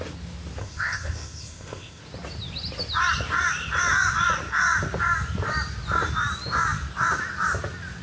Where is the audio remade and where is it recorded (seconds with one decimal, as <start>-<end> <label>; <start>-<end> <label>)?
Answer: 0.0-0.6 recorded; 0.6-2.0 remade; 2.0-8.0 recorded